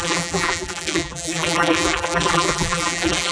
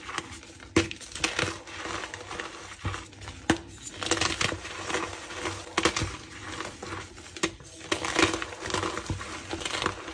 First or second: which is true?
second